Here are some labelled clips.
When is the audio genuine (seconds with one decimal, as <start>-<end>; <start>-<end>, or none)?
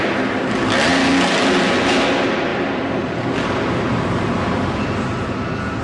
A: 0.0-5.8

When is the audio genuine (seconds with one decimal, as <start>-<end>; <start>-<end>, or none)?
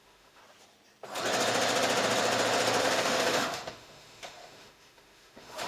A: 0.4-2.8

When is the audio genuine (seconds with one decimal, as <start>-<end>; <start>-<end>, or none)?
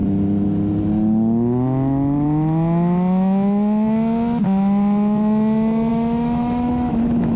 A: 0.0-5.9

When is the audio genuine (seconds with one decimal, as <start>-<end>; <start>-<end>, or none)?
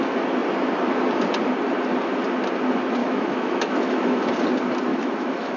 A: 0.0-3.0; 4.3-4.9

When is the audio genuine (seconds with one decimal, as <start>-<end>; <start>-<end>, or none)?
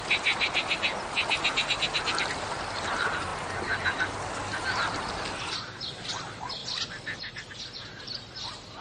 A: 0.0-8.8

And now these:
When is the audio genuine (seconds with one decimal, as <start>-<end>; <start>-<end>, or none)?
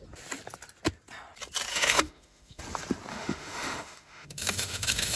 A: 0.0-1.7; 2.6-3.1